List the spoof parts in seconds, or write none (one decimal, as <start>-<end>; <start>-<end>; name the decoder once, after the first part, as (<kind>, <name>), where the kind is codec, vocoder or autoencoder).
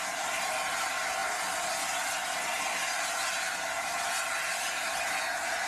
none